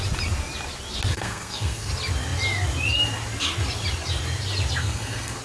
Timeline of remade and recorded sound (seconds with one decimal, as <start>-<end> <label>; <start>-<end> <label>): 0.0-1.1 recorded; 1.1-1.9 remade; 1.9-4.8 recorded; 4.8-5.4 remade